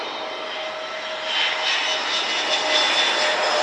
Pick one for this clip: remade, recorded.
recorded